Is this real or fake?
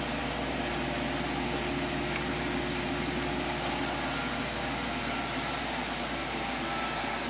real